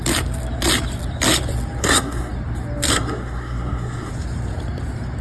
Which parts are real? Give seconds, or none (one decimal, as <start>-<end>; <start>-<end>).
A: 0.0-1.8; 2.3-2.9; 4.1-5.2